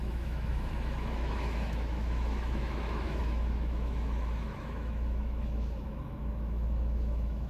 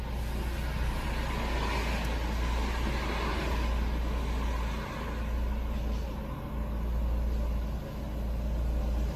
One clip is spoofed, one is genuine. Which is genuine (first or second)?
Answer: second